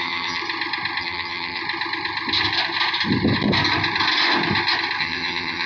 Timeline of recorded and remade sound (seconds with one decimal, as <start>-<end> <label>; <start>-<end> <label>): 0.0-0.4 remade; 0.4-1.0 recorded; 1.0-1.6 remade; 1.6-5.0 recorded; 5.0-5.7 remade